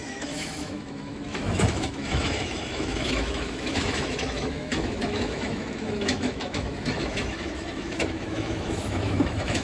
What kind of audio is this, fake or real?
fake